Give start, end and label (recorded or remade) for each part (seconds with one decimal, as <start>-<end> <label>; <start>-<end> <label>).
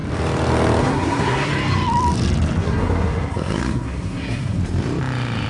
0.0-0.8 recorded; 0.8-1.5 remade; 1.5-2.6 recorded; 2.6-4.6 remade; 4.6-5.5 recorded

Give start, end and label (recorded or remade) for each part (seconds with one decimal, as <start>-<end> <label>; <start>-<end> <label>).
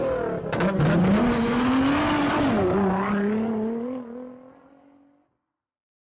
0.0-6.1 recorded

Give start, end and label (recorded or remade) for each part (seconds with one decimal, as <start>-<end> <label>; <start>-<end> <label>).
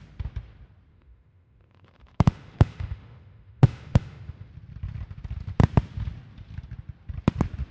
0.0-0.9 recorded; 0.9-4.5 remade; 4.5-7.7 recorded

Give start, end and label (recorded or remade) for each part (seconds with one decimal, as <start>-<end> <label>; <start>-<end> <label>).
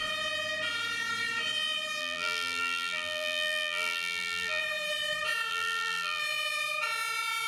0.0-2.0 recorded; 2.0-4.6 remade; 4.6-5.5 recorded; 5.5-6.2 remade; 6.2-7.5 recorded